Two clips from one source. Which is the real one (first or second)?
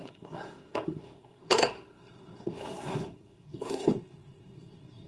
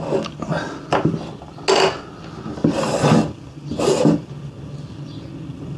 second